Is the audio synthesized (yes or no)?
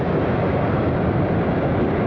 no